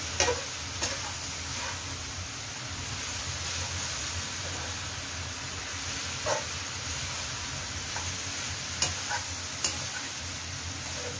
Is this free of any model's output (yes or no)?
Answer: yes